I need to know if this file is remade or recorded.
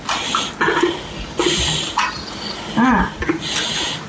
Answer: recorded